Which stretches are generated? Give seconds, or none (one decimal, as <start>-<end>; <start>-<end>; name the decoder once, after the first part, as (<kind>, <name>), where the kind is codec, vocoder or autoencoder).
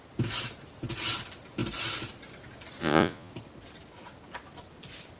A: 2.8-3.3 (vocoder, Vocos)